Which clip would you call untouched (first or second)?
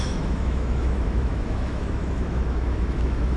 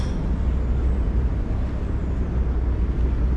second